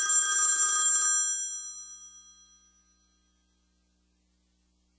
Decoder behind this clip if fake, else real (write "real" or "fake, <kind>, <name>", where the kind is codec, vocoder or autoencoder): real